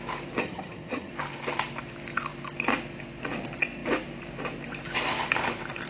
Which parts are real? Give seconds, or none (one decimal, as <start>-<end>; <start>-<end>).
0.0-0.4; 1.1-5.9

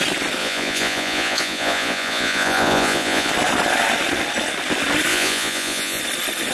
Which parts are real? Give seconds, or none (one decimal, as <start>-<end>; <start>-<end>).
0.0-0.4; 3.3-5.1; 6.0-6.5

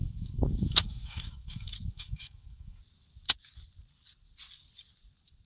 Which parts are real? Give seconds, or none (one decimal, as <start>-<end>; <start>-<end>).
2.8-5.5

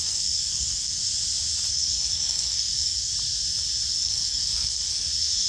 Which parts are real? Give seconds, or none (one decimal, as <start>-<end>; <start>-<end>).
1.0-1.7; 3.1-3.9

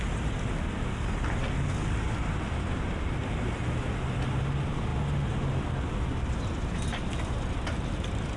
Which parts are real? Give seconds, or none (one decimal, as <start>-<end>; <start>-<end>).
0.0-8.4